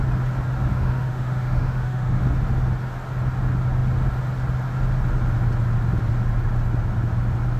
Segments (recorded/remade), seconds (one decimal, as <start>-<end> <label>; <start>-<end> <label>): 0.0-0.7 recorded; 0.7-2.2 remade; 2.2-7.6 recorded